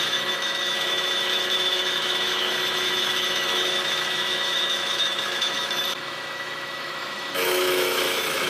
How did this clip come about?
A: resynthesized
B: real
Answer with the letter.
A